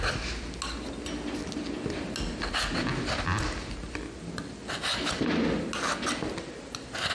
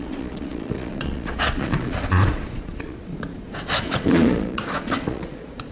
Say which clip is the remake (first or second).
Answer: second